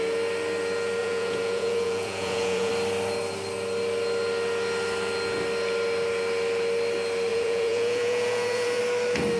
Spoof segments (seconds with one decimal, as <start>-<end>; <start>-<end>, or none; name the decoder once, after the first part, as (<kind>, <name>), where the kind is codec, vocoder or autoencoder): 1.0-2.7 (vocoder, Vocos); 7.3-8.8